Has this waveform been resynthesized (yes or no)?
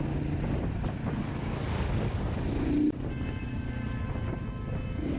no